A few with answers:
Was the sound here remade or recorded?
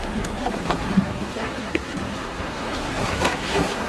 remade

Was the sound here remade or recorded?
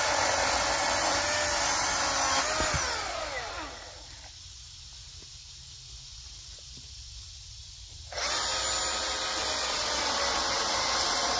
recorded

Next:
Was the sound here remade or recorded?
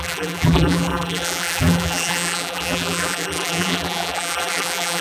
remade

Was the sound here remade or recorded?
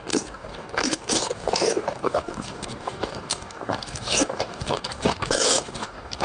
remade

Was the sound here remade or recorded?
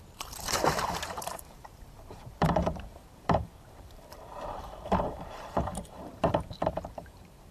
remade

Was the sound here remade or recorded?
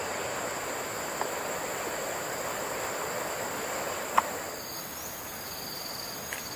recorded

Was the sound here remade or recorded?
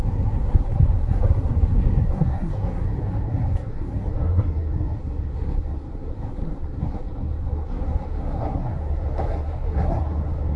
remade